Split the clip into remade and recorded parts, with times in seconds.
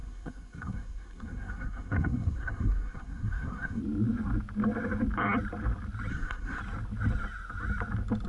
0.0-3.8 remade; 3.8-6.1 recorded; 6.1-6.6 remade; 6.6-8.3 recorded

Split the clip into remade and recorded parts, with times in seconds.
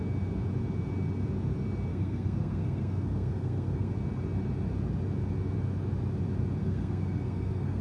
0.0-1.9 recorded; 1.9-3.9 remade; 3.9-6.6 recorded; 6.6-7.8 remade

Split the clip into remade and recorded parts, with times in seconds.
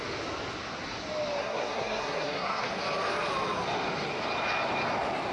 0.0-1.4 recorded; 1.4-2.7 remade; 2.7-5.3 recorded